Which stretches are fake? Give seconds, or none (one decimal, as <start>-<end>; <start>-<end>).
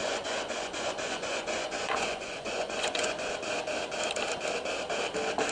0.0-3.3